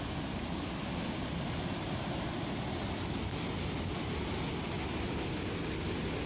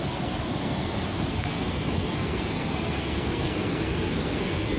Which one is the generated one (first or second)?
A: second